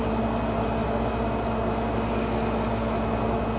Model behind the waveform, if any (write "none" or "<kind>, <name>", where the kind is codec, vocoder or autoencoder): none